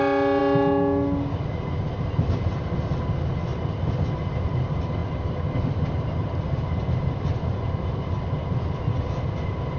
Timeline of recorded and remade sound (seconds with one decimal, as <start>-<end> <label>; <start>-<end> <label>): 0.0-9.8 recorded